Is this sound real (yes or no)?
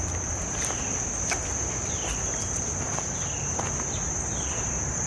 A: yes